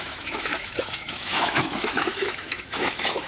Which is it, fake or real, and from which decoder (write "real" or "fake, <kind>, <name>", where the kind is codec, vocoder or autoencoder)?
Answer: fake, autoencoder, DAC-VAE